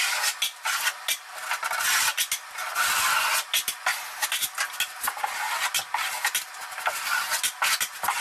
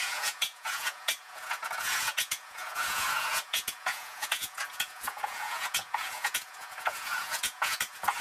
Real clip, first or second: first